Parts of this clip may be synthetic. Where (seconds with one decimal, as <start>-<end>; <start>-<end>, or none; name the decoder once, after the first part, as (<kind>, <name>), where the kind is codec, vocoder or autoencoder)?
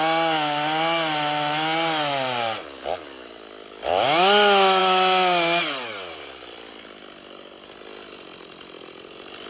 none